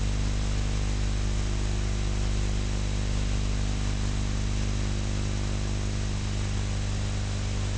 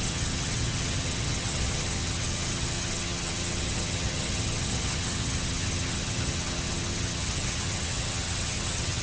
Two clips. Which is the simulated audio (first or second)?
second